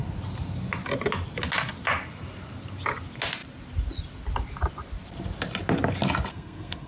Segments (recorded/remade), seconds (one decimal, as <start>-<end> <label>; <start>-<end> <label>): 0.0-6.3 recorded; 6.3-6.9 remade